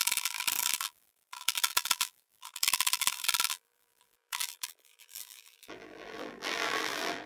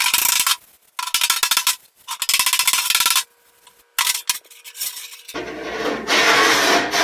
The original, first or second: second